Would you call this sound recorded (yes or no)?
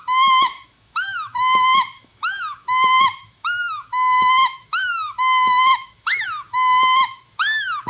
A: no